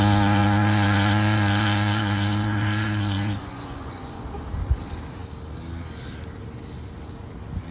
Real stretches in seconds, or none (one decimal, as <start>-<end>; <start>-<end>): 0.0-0.4; 4.2-7.7